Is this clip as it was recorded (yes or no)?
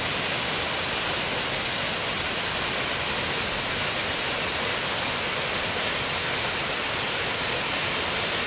yes